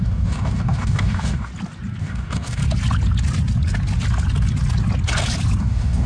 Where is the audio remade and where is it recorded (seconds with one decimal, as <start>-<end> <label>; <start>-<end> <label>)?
0.0-1.5 remade; 1.5-2.0 recorded; 2.0-2.6 remade; 2.6-5.6 recorded; 5.6-6.1 remade